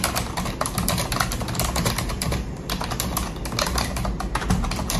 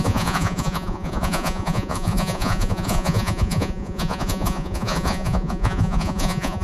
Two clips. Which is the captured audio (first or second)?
first